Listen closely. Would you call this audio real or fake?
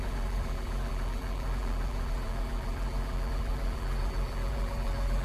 fake